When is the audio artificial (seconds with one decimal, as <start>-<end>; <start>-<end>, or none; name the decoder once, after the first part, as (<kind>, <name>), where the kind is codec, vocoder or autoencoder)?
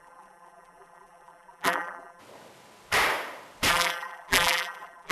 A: 0.0-2.2 (vocoder, BigVGAN v2); 3.7-5.1